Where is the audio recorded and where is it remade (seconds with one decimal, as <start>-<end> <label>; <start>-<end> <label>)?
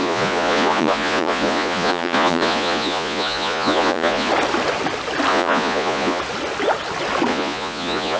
0.0-4.3 remade; 4.3-5.3 recorded; 5.3-6.2 remade; 6.2-7.3 recorded; 7.3-8.2 remade